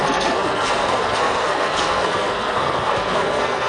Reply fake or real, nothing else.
fake